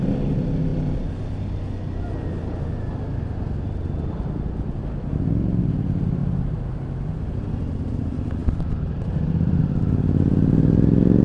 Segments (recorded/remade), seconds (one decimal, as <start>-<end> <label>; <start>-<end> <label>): 0.0-8.4 recorded; 8.4-9.6 remade; 9.6-11.2 recorded